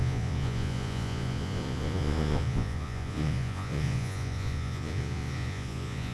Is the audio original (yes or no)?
no